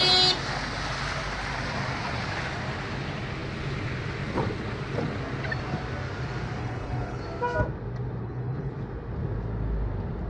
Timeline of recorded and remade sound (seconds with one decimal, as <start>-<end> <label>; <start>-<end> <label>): 0.0-6.6 recorded; 6.6-7.2 remade; 7.2-8.2 recorded; 8.2-8.7 remade; 8.7-10.3 recorded